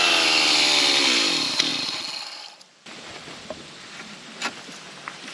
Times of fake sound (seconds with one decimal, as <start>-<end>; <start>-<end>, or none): 0.0-1.7; 2.2-5.3